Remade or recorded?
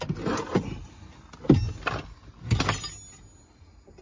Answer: recorded